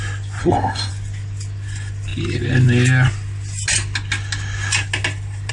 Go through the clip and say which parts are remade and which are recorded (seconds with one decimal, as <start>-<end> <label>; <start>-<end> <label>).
0.0-0.4 recorded; 0.4-0.9 remade; 0.9-5.5 recorded

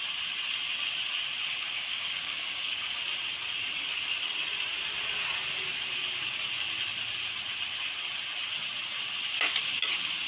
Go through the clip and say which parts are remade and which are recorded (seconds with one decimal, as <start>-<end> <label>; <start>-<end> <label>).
0.0-1.5 recorded; 1.5-3.0 remade; 3.0-10.3 recorded

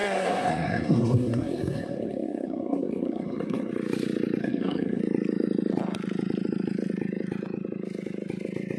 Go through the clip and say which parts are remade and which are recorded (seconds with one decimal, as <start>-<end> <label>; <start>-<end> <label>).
0.0-3.7 remade; 3.7-4.4 recorded; 4.4-5.0 remade; 5.0-8.8 recorded